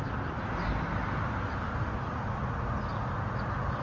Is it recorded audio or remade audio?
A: recorded